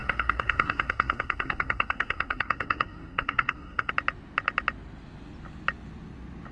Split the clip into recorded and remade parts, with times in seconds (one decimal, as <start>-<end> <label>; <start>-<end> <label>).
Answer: 0.0-3.9 remade; 3.9-6.5 recorded